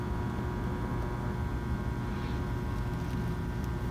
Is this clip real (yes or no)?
yes